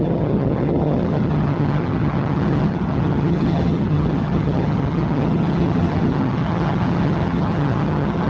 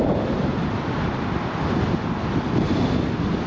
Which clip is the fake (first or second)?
first